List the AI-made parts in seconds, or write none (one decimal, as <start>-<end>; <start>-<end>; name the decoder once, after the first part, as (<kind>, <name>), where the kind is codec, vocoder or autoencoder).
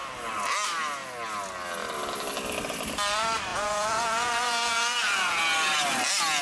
3.5-5.4 (vocoder, Vocos)